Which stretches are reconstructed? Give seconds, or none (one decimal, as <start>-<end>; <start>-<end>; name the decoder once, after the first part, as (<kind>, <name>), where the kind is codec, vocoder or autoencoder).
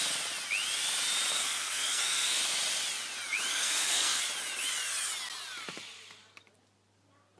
1.3-2.4 (codec, SNAC); 3.5-4.2